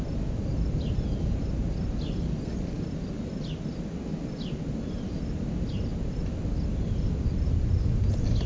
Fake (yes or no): no